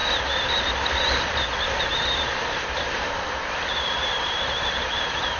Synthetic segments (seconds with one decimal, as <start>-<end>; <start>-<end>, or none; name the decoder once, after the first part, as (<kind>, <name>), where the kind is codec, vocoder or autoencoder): 2.8-5.4 (vocoder, BigVGAN v2)